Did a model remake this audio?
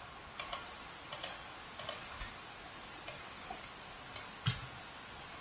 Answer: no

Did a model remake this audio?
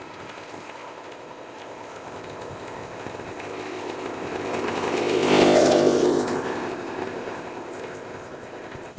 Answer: yes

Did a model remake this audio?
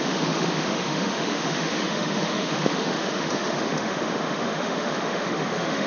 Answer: yes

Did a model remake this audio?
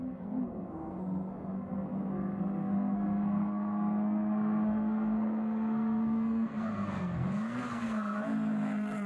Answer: yes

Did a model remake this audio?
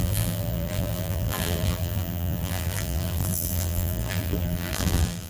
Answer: yes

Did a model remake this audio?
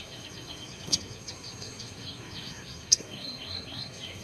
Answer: yes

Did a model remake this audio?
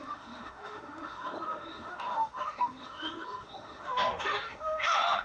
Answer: yes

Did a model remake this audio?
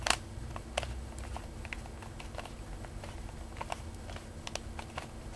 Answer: no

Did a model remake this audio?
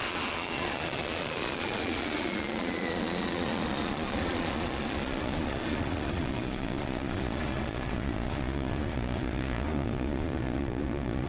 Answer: yes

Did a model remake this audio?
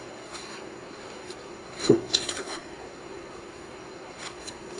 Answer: yes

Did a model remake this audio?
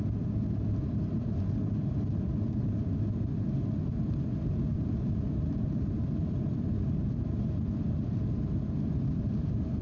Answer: no